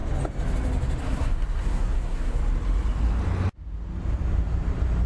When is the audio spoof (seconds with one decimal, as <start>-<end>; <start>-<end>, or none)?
1.0-2.4